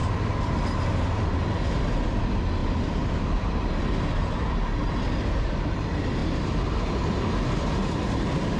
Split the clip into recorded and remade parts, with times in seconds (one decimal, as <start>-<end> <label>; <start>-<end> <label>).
0.0-2.6 recorded; 2.6-3.7 remade; 3.7-6.2 recorded; 6.2-6.9 remade; 6.9-8.6 recorded

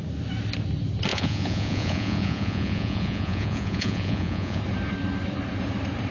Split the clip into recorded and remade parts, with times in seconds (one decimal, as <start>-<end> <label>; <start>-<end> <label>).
0.0-1.1 recorded; 1.1-4.6 remade; 4.6-6.1 recorded

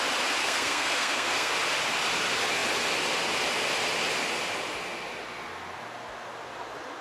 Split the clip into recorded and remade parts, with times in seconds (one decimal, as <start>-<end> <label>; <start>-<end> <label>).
0.0-0.4 recorded; 0.4-1.5 remade; 1.5-7.0 recorded

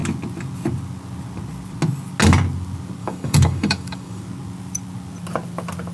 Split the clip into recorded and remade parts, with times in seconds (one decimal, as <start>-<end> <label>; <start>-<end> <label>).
0.0-3.0 recorded; 3.0-4.2 remade; 4.2-5.9 recorded

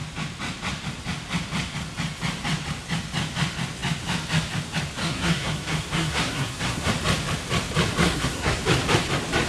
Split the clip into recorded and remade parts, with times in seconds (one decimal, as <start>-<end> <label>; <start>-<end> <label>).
0.0-5.0 recorded; 5.0-6.9 remade; 6.9-8.0 recorded; 8.0-8.6 remade; 8.6-9.5 recorded

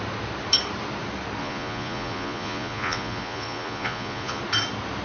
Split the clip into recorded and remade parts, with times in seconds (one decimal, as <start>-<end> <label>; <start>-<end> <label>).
0.0-1.4 recorded; 1.4-4.4 remade; 4.4-5.0 recorded

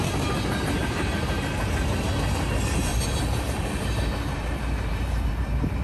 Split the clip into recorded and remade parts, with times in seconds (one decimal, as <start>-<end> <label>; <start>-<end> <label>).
0.0-2.9 recorded; 2.9-5.3 remade; 5.3-5.8 recorded